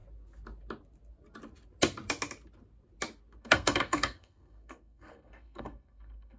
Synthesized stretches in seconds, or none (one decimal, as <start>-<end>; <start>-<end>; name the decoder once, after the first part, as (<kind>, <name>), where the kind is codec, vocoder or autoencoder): 3.4-6.4 (codec, SNAC)